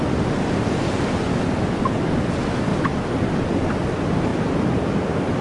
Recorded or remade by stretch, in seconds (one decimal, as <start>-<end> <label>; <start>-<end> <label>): 0.0-5.4 recorded